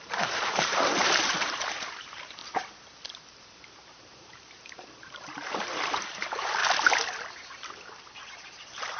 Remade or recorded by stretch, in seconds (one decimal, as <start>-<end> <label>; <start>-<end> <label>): 0.0-2.4 remade; 2.4-3.7 recorded; 3.7-6.6 remade; 6.6-8.3 recorded; 8.3-9.0 remade